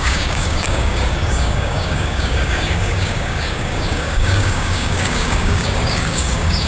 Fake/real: fake